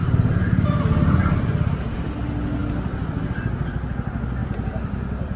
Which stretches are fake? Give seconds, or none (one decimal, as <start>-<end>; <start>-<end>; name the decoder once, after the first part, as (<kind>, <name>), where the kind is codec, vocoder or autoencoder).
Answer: 0.0-0.8 (vocoder, BigVGAN v2); 4.4-5.4